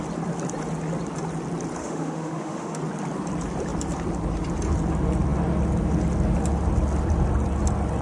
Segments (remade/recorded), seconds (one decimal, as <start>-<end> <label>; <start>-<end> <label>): 0.0-1.8 recorded; 1.8-2.8 remade; 2.8-8.0 recorded